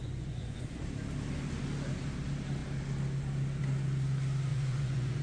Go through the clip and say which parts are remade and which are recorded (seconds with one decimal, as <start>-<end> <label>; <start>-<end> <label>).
0.0-0.8 remade; 0.8-4.5 recorded; 4.5-5.2 remade

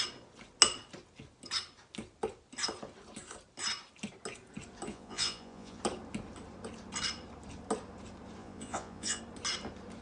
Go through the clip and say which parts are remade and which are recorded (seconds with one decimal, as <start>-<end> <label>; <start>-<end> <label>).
0.0-4.9 recorded; 4.9-5.8 remade; 5.8-8.4 recorded; 8.4-9.2 remade; 9.2-10.0 recorded

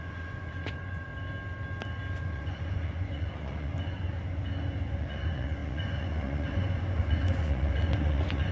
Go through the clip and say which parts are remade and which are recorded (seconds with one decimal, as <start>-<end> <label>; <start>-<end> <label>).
0.0-1.1 remade; 1.1-2.2 recorded; 2.2-3.7 remade; 3.7-5.0 recorded; 5.0-8.5 remade

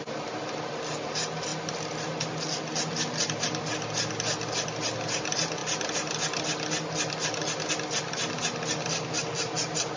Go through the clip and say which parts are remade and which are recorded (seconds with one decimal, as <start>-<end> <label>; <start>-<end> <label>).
0.0-10.0 recorded

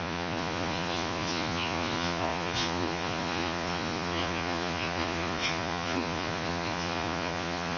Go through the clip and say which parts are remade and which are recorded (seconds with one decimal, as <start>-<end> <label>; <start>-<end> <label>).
0.0-7.8 remade

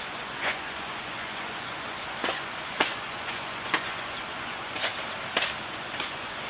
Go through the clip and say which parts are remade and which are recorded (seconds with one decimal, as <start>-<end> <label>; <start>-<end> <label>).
0.0-4.9 remade; 4.9-5.6 recorded; 5.6-6.5 remade